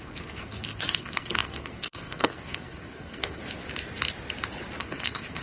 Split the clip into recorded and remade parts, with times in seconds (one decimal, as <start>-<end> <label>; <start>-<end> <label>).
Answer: 0.0-3.4 remade; 3.4-4.8 recorded; 4.8-5.4 remade